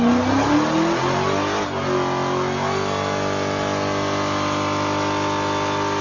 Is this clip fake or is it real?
real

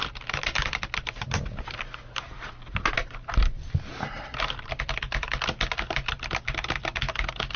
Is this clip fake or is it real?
real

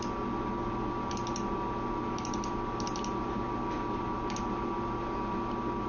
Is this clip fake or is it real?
real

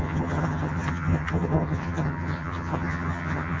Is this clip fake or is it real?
fake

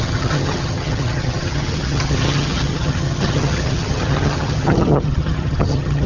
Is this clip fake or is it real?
fake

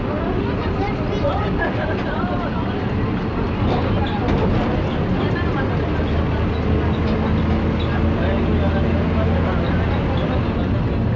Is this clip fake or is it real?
real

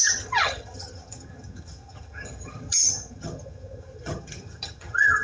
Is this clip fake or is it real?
fake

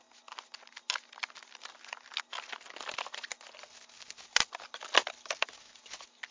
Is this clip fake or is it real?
real